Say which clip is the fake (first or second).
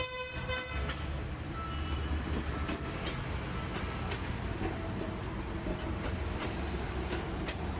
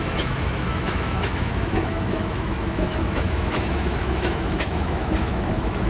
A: second